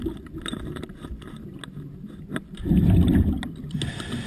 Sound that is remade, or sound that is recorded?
recorded